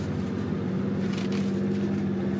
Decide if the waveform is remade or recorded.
recorded